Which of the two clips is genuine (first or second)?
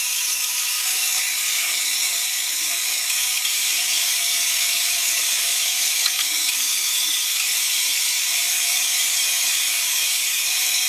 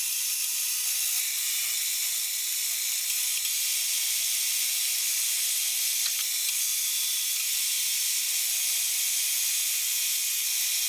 second